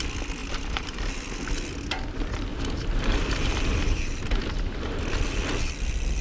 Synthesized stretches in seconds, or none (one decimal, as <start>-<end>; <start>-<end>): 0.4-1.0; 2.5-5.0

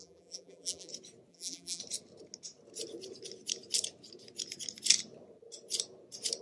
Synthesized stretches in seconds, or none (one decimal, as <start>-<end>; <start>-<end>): 0.0-0.9; 1.3-1.8

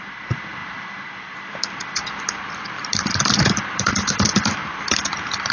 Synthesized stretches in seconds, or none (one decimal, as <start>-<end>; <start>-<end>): 0.0-5.5